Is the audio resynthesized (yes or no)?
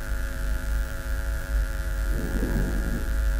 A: yes